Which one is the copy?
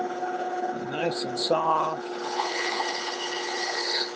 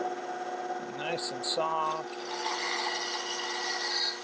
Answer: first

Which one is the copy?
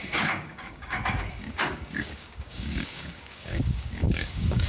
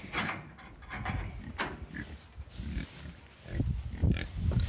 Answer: first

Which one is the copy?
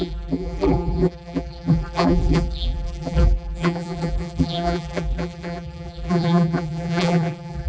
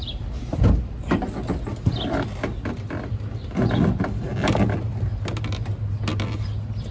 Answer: first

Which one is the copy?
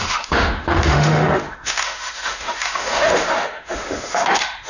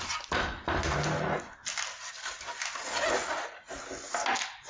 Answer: first